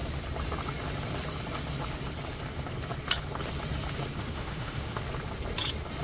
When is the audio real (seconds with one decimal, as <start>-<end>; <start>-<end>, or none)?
0.0-4.2; 5.0-6.0